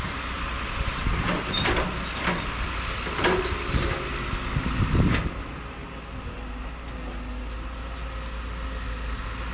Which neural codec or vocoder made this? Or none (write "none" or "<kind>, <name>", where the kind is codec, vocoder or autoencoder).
none